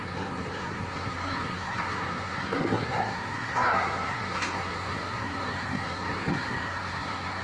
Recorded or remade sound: remade